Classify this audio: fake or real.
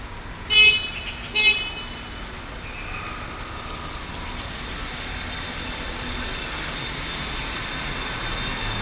real